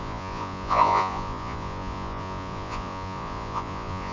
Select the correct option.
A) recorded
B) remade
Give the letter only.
B